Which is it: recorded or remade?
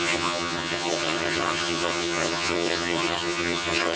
remade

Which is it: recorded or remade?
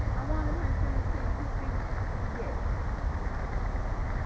recorded